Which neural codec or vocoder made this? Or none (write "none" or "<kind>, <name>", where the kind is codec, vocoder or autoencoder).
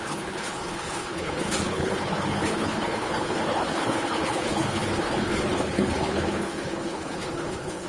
codec, HILCodec